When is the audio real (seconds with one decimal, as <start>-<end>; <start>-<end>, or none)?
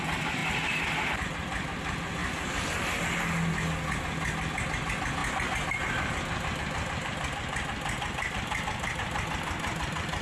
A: 0.0-10.2